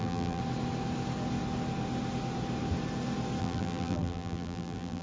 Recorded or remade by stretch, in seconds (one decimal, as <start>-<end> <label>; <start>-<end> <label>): 0.0-0.4 remade; 0.4-3.4 recorded; 3.4-5.0 remade